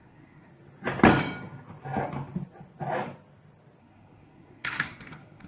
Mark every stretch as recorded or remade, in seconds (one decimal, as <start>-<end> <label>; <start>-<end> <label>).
0.0-0.5 remade; 0.5-3.8 recorded; 3.8-5.5 remade